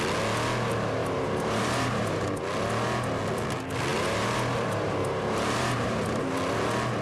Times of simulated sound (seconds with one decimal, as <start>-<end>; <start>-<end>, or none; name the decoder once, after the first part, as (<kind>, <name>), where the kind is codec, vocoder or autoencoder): 1.0-2.2 (vocoder, BigVGAN v2); 3.9-6.2